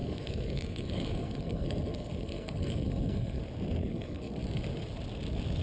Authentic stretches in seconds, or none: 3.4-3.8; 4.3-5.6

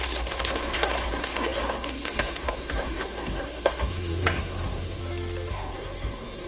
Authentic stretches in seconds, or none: 5.0-5.5

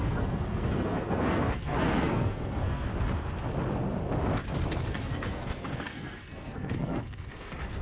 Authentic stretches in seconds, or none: 2.9-4.9

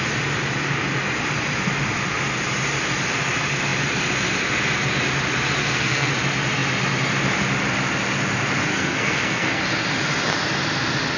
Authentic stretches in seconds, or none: 0.0-5.6; 6.1-8.7; 9.6-11.2

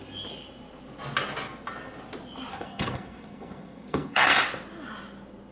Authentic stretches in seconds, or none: 0.0-2.5; 4.4-5.5